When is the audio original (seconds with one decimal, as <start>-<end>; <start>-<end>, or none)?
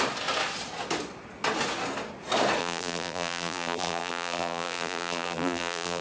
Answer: 0.0-2.6